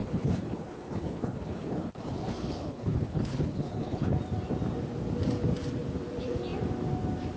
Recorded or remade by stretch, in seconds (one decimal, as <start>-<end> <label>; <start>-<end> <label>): 0.0-4.1 remade; 4.1-7.4 recorded